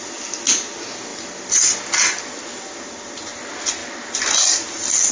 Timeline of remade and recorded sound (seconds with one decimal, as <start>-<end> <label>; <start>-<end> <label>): 0.0-5.1 recorded